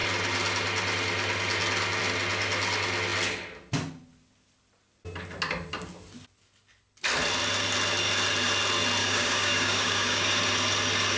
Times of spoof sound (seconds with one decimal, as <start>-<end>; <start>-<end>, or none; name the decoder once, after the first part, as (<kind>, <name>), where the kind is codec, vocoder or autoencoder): 9.0-10.4 (codec, DAC)